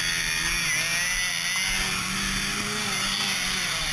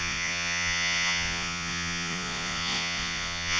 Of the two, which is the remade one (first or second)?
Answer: second